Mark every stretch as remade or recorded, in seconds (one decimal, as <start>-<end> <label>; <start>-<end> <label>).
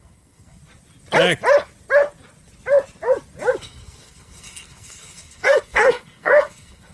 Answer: 0.0-0.6 remade; 0.6-3.6 recorded; 3.6-6.9 remade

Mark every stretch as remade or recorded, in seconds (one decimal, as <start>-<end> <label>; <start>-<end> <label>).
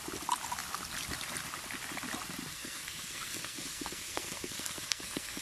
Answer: 0.0-2.5 recorded; 2.5-5.4 remade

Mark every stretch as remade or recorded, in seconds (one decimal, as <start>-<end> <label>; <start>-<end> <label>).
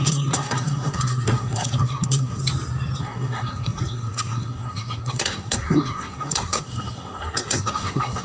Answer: 0.0-2.4 remade; 2.4-3.0 recorded; 3.0-8.2 remade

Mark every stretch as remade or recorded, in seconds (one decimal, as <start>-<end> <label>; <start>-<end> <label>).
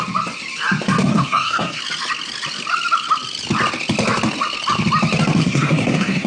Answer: 0.0-1.1 recorded; 1.1-1.8 remade; 1.8-5.4 recorded; 5.4-6.3 remade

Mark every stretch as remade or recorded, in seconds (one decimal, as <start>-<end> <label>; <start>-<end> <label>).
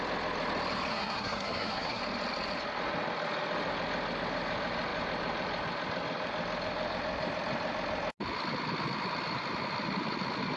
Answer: 0.0-0.9 recorded; 0.9-2.0 remade; 2.0-10.6 recorded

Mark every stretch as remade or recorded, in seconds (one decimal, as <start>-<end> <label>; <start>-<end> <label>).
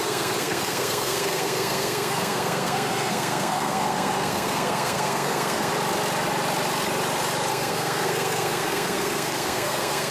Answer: 0.0-5.7 remade; 5.7-7.5 recorded; 7.5-10.1 remade